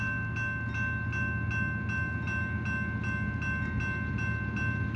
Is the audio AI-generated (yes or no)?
no